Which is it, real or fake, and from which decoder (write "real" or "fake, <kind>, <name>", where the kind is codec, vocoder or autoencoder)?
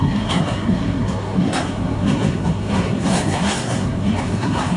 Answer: fake, codec, SNAC